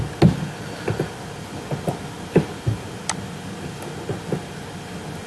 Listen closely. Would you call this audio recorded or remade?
recorded